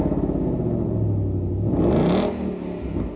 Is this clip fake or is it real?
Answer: real